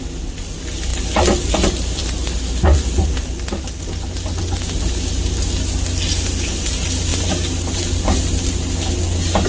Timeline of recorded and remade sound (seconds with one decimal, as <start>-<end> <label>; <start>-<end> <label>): 0.0-9.5 recorded